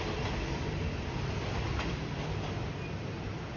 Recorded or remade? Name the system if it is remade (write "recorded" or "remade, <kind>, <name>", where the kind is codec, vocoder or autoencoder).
recorded